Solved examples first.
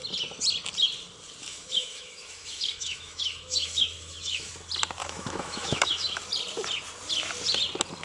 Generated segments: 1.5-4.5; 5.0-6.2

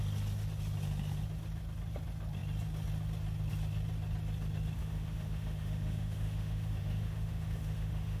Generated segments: 4.8-8.2

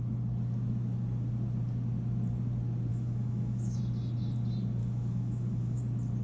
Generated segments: 2.9-3.8; 4.8-5.8

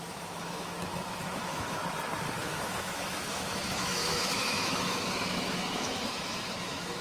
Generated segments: 0.0-1.8; 2.4-7.0

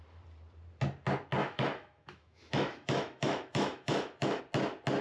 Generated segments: 1.4-4.4